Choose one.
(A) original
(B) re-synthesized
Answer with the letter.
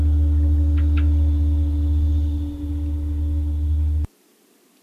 A